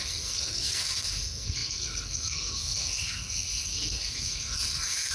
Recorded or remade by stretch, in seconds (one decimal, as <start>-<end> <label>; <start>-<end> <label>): 0.0-5.1 remade